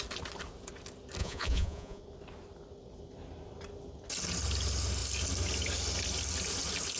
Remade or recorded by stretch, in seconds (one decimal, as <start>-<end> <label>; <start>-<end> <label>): 0.0-1.2 recorded; 1.2-2.0 remade; 2.0-7.0 recorded